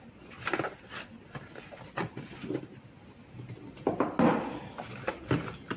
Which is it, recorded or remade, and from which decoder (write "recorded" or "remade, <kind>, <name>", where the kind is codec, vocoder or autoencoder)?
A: recorded